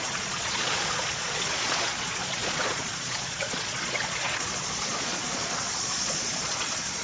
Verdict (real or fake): fake